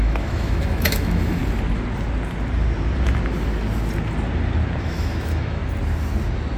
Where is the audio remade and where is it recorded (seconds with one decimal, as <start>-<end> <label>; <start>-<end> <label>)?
0.0-1.4 remade; 1.4-4.8 recorded; 4.8-5.6 remade; 5.6-6.6 recorded